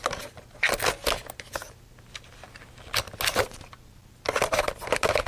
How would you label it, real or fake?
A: real